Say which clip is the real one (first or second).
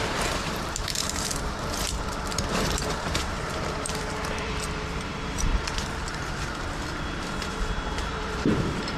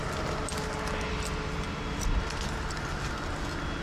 second